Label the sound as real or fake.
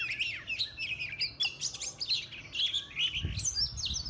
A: real